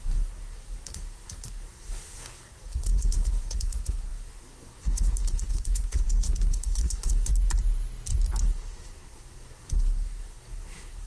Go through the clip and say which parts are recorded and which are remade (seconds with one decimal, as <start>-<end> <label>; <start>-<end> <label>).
0.0-7.3 remade; 7.3-8.4 recorded; 8.4-11.1 remade